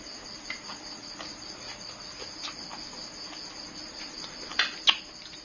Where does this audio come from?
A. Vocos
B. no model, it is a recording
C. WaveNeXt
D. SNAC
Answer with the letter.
B